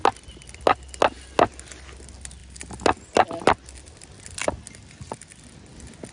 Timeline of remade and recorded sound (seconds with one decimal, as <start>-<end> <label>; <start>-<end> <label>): 0.0-6.1 recorded